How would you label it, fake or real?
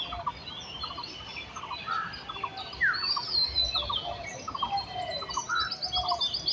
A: real